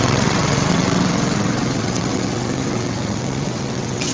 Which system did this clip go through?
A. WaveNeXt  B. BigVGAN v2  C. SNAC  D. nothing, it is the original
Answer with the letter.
A